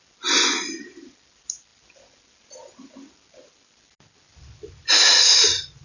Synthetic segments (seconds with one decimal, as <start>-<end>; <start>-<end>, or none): none